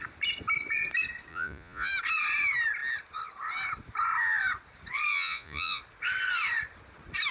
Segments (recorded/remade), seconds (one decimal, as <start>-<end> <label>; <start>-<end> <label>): 0.0-1.3 recorded; 1.3-1.9 remade; 1.9-5.1 recorded; 5.1-5.8 remade; 5.8-7.3 recorded